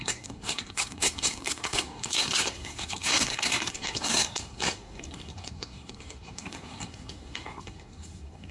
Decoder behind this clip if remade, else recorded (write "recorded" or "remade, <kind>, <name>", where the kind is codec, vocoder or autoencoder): remade, codec, SNAC